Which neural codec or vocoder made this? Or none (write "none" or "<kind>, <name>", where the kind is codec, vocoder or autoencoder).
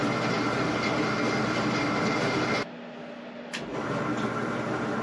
none